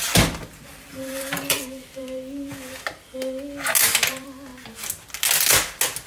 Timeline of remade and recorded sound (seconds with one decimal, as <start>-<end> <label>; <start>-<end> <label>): 0.0-2.5 remade; 2.5-4.0 recorded; 4.0-4.5 remade; 4.5-6.1 recorded

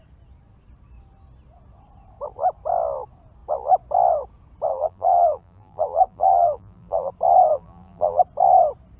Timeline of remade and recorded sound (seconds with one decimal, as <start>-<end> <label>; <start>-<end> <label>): 0.0-4.7 recorded; 4.7-7.1 remade; 7.1-7.5 recorded; 7.5-8.2 remade; 8.2-9.0 recorded